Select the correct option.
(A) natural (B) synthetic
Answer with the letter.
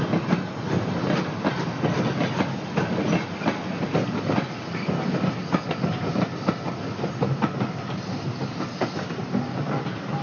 A